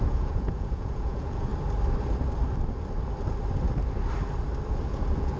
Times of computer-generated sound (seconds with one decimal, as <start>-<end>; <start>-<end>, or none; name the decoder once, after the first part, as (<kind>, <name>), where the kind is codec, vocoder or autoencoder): 0.0-1.5 (vocoder, Vocos); 4.7-5.4